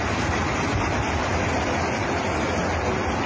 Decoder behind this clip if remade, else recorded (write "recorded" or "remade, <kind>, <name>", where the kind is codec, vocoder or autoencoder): recorded